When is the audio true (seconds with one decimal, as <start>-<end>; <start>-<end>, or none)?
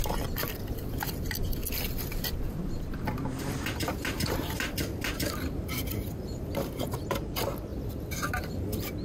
0.0-7.7; 8.6-9.0